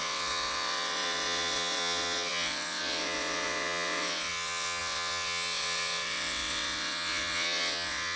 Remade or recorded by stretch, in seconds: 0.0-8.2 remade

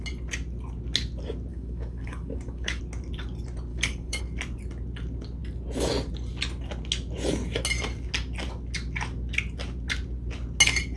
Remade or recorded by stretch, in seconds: 0.0-1.5 recorded; 1.5-2.8 remade; 2.8-3.7 recorded; 3.7-4.2 remade; 4.2-11.0 recorded

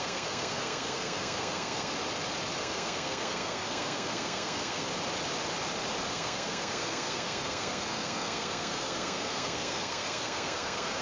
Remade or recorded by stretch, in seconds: 0.0-1.9 remade; 1.9-2.6 recorded; 2.6-4.9 remade; 4.9-6.1 recorded; 6.1-11.0 remade

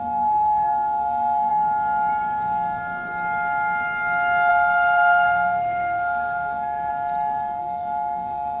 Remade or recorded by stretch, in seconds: 0.0-1.5 remade; 1.5-4.5 recorded; 4.5-6.9 remade; 6.9-7.6 recorded; 7.6-8.6 remade